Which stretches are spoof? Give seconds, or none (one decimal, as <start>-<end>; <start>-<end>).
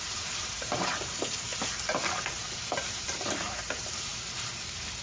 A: 0.0-1.5; 2.4-4.1